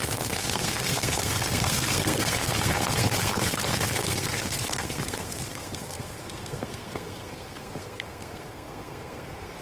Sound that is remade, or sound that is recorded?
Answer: remade